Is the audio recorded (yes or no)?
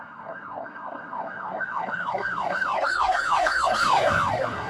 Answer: no